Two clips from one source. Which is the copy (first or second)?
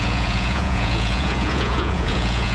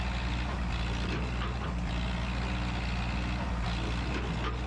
first